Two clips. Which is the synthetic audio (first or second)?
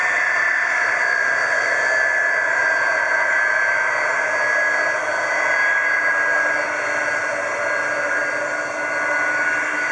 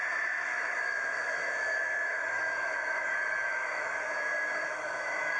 second